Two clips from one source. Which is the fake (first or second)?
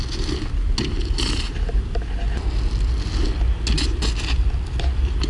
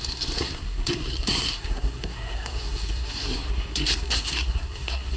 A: second